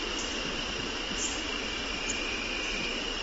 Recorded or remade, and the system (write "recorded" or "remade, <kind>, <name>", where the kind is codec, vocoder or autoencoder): recorded